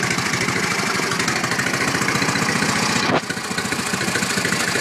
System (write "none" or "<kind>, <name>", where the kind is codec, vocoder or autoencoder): none